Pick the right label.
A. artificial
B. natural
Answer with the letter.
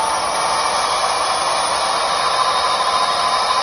B